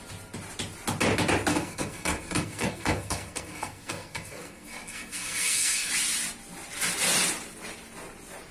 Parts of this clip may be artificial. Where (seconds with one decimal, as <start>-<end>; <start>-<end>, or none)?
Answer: 1.5-5.9